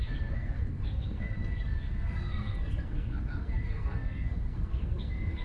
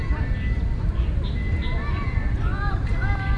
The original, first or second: second